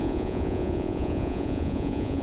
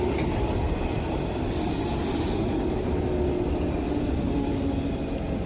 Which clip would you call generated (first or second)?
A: first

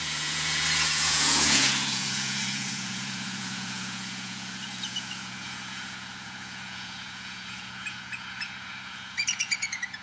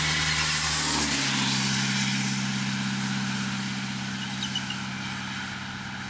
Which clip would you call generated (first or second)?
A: first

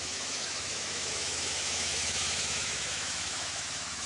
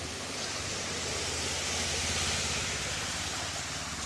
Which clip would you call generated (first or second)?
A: first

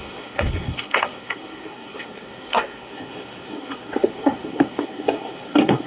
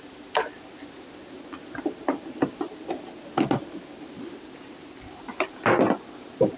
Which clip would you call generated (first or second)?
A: first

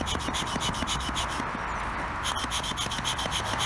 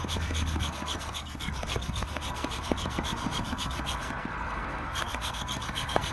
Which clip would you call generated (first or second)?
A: second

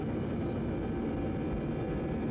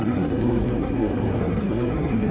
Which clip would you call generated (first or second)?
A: second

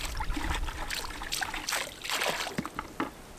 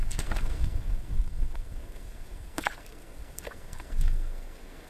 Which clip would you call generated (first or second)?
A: second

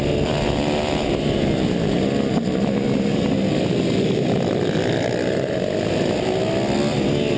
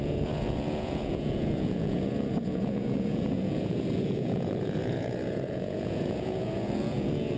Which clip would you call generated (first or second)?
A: second